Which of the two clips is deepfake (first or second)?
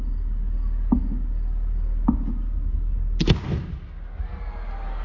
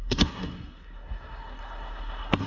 second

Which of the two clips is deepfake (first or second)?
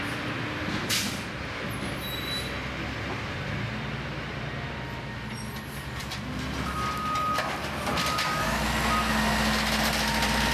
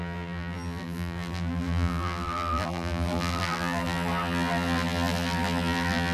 second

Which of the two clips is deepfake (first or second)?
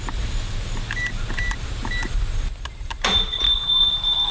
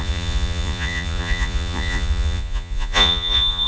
second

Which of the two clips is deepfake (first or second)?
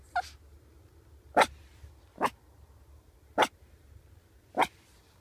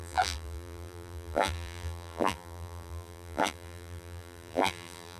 second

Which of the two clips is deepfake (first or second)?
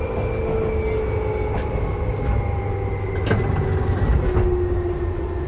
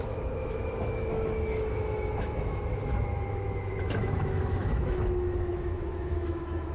second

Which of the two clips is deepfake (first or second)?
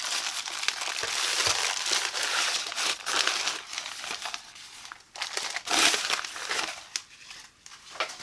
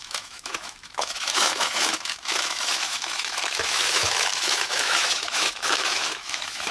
second